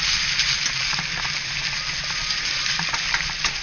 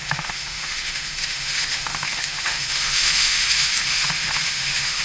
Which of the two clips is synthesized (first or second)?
second